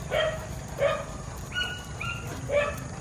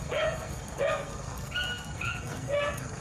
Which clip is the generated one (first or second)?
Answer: second